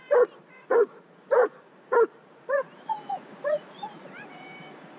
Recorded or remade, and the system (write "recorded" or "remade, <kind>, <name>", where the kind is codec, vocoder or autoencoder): remade, vocoder, Vocos